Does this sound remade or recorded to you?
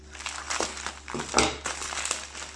recorded